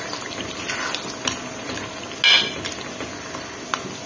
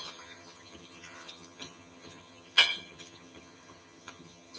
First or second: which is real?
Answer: first